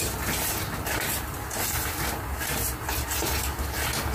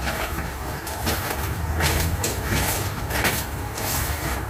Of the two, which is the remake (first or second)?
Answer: second